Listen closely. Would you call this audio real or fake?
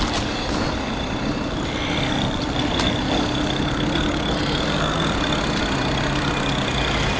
real